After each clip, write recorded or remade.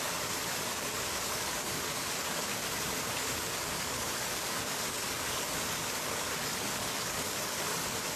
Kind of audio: remade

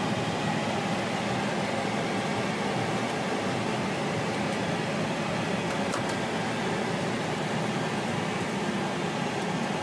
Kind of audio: recorded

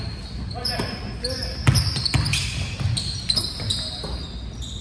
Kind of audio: recorded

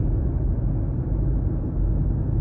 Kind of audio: recorded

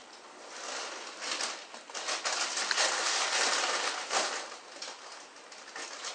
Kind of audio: recorded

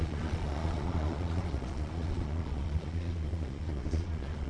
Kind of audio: remade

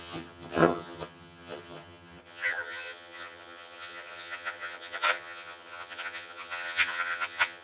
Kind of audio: remade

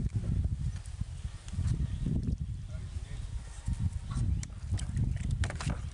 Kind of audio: recorded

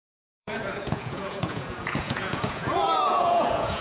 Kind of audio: remade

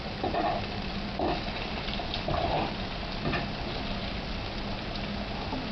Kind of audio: recorded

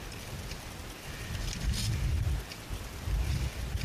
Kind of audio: recorded